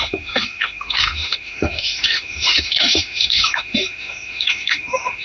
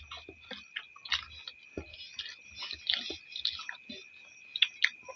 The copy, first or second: first